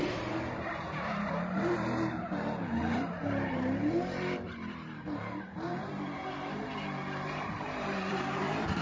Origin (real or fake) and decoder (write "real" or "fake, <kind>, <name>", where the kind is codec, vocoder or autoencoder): fake, vocoder, BigVGAN v2